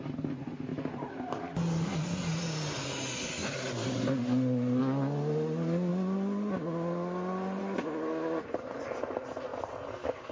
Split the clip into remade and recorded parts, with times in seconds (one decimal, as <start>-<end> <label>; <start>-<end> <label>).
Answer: 0.0-10.3 recorded